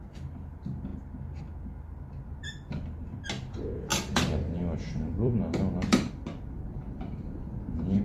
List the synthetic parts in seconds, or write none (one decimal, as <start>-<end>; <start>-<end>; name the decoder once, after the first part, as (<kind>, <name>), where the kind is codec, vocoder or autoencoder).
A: 3.9-8.0 (vocoder, BigVGAN v2)